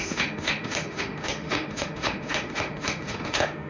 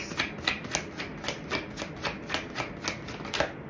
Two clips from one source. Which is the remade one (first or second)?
first